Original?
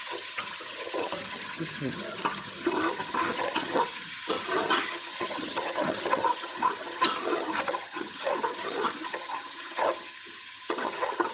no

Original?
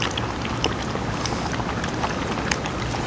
yes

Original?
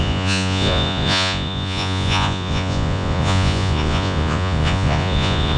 no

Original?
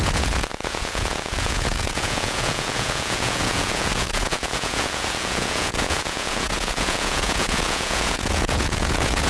no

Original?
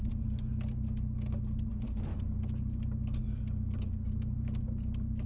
yes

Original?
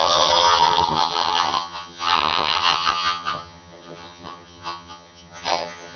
no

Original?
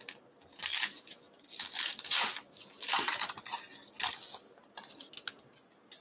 yes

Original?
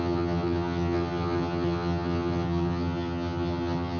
no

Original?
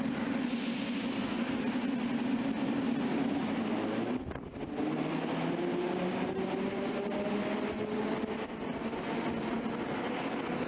yes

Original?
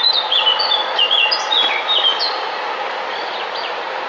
yes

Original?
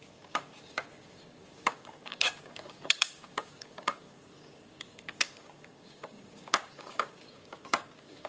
no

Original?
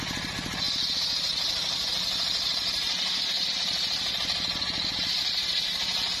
yes